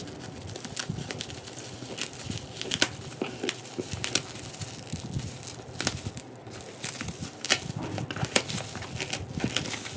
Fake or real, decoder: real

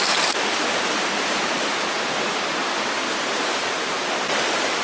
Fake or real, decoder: real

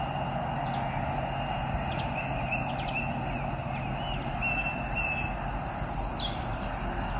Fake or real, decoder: real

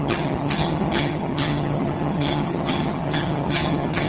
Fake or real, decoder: fake, vocoder, HiFi-GAN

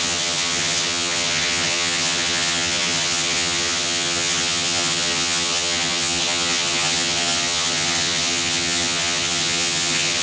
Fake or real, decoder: fake, vocoder, HiFi-GAN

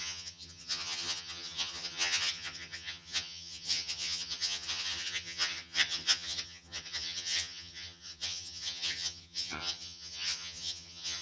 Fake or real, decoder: fake, vocoder, HiFi-GAN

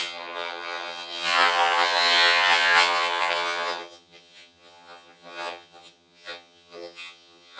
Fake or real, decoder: fake, vocoder, HiFi-GAN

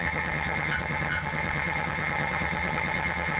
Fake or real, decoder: fake, vocoder, HiFi-GAN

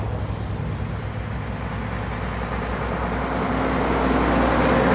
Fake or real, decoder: real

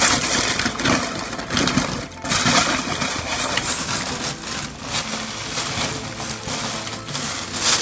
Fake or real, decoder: real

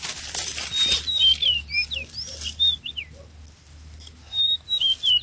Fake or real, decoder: real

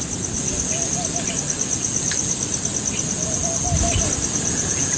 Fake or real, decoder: real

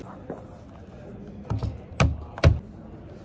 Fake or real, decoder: real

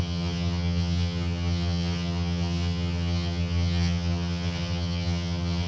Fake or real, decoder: fake, vocoder, HiFi-GAN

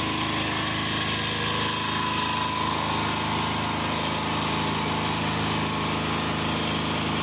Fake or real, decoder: real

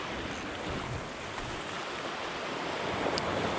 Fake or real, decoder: real